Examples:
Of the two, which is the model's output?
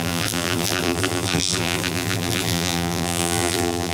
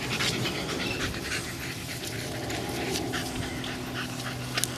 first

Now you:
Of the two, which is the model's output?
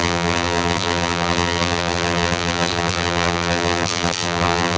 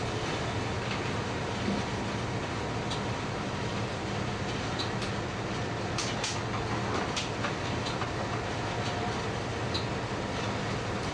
first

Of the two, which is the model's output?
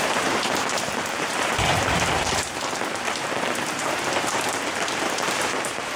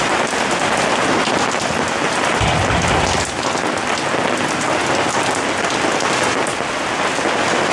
first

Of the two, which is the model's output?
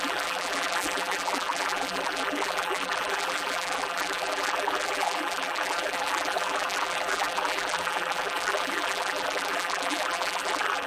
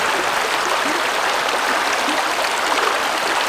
first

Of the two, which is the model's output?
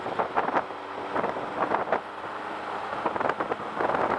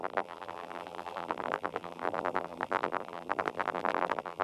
second